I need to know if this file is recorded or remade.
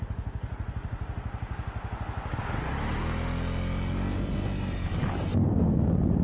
recorded